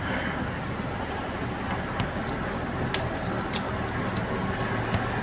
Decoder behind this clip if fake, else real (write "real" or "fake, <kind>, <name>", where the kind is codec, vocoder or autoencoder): real